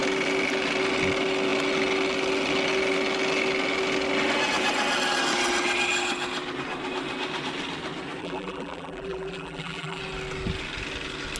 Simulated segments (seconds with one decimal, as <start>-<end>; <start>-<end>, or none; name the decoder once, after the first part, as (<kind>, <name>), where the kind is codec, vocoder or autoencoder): 8.2-10.0 (vocoder, BigVGAN v2)